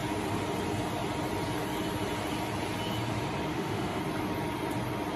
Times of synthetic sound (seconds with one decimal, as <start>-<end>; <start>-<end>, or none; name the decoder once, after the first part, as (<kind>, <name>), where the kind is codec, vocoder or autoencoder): 3.5-4.0 (autoencoder, DAC-VAE)